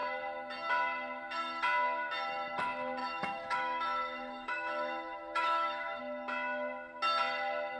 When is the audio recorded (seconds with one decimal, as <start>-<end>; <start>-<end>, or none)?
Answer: 0.0-3.0; 6.0-7.8